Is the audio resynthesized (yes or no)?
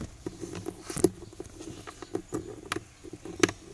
no